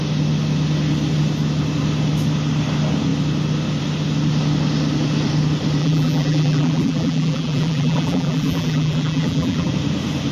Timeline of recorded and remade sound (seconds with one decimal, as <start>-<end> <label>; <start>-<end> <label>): 0.0-5.8 recorded; 5.8-9.7 remade; 9.7-10.3 recorded